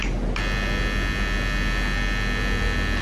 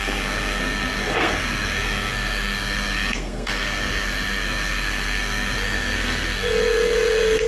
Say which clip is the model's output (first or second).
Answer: second